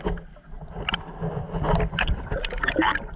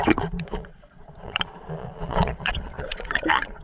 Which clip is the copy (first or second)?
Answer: second